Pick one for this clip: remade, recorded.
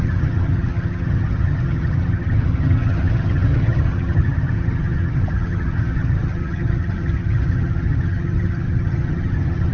remade